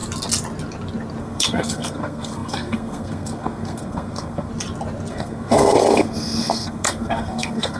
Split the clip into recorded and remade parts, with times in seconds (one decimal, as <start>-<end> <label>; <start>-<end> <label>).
0.0-1.2 recorded; 1.2-4.5 remade; 4.5-5.1 recorded; 5.1-7.8 remade